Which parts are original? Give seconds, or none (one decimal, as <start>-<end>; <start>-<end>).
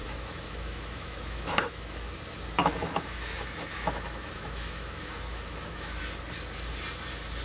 2.1-2.6; 6.0-7.4